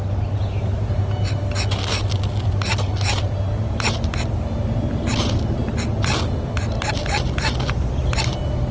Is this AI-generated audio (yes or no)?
no